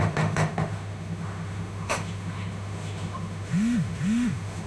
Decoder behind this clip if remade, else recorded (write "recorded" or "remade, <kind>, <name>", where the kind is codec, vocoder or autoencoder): remade, autoencoder, DAC-VAE